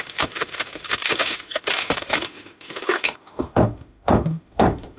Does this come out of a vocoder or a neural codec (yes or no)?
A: yes